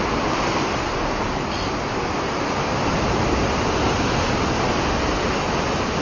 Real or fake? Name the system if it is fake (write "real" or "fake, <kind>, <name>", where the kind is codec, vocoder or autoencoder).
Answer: real